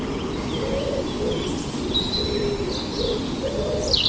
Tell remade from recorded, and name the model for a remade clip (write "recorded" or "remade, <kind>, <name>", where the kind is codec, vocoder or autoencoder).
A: recorded